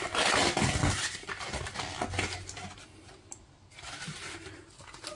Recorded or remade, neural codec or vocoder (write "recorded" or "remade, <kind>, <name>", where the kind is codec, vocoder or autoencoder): recorded